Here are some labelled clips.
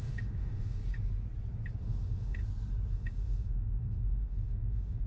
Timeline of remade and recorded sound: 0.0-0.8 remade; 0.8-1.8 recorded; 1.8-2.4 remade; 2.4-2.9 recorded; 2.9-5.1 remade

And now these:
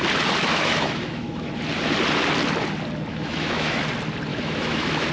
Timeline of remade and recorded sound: 0.0-0.4 recorded; 0.4-1.5 remade; 1.5-3.1 recorded; 3.1-3.8 remade; 3.8-4.3 recorded; 4.3-5.1 remade

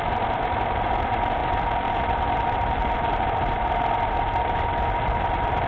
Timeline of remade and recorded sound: 0.0-5.7 recorded

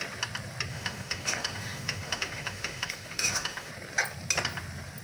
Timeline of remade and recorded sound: 0.0-0.7 recorded; 0.7-3.7 remade; 3.7-5.0 recorded